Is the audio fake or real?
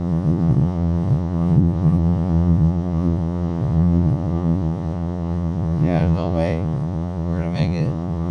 fake